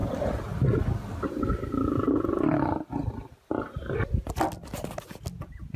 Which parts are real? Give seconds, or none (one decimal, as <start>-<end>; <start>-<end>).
0.0-5.8